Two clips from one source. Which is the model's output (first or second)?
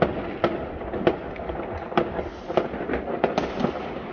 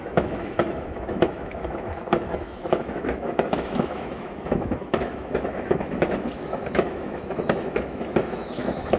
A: second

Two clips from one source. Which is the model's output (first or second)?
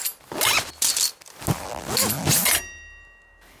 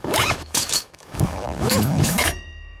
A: second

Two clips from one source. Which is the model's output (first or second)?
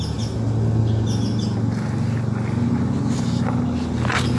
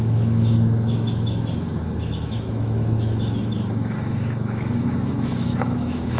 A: second